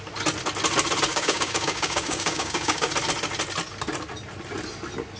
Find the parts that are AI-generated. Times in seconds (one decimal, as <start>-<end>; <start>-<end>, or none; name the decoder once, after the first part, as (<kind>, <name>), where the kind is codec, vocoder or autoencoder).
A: 1.1-2.9 (codec, DAC)